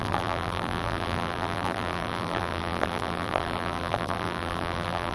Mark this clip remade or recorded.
remade